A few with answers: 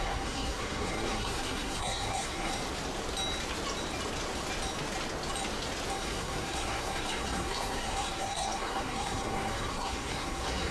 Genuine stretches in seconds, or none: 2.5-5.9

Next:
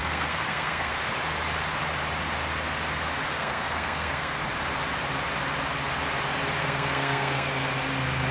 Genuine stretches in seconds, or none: 0.9-3.3; 4.4-6.6; 7.5-8.3

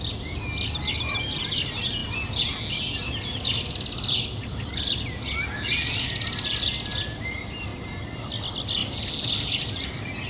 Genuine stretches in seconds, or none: 0.0-10.3

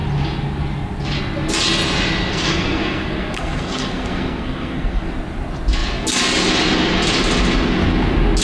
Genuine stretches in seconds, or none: 0.0-2.3; 5.1-8.4